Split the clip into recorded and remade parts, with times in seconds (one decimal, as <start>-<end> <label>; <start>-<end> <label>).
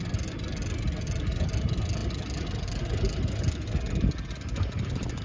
0.0-5.2 recorded